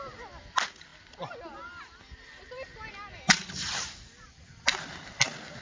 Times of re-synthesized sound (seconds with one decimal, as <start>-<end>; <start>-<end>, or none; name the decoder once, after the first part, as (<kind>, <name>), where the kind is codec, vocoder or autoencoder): none